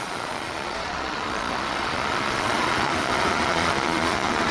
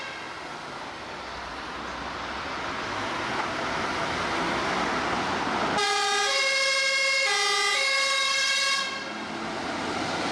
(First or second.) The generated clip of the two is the first